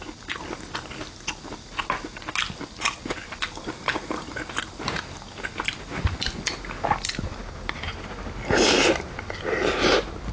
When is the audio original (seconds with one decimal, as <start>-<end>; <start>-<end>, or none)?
0.0-10.3